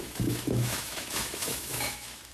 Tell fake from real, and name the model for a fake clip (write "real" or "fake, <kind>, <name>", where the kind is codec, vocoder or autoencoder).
fake, autoencoder, DAC-VAE